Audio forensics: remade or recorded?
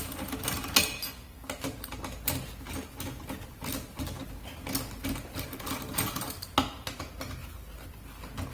recorded